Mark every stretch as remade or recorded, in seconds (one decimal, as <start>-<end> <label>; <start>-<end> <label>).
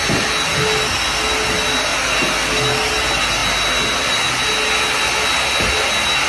0.0-6.3 recorded